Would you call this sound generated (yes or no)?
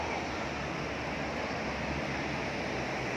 no